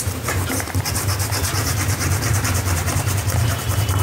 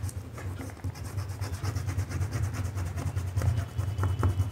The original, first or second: second